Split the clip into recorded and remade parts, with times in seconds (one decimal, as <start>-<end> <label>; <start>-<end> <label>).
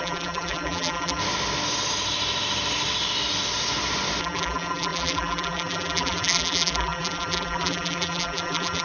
0.0-1.2 remade; 1.2-4.2 recorded; 4.2-8.8 remade